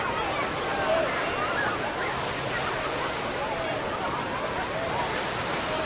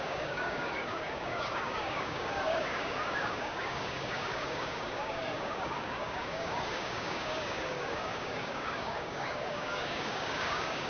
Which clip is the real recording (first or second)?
first